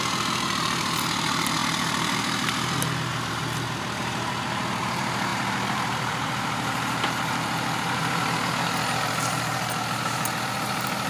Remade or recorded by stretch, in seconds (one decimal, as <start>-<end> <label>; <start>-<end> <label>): 0.0-11.1 remade